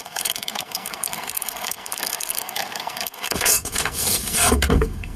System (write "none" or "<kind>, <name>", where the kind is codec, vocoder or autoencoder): codec, SNAC